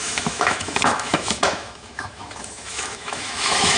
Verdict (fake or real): fake